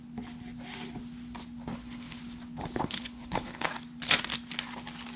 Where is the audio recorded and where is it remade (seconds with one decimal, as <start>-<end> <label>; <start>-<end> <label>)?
0.0-1.7 recorded; 1.7-2.2 remade; 2.2-2.8 recorded; 2.8-3.7 remade; 3.7-5.2 recorded